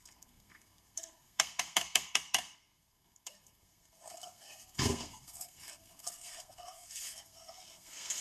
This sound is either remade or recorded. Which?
remade